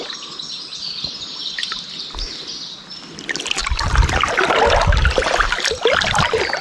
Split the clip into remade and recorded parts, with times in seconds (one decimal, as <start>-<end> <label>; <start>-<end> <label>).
0.0-6.6 recorded